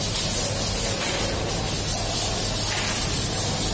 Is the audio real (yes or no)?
yes